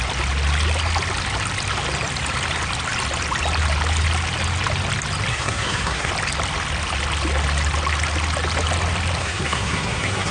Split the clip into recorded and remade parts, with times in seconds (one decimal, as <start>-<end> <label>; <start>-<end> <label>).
0.0-5.3 recorded; 5.3-6.1 remade; 6.1-9.2 recorded; 9.2-10.3 remade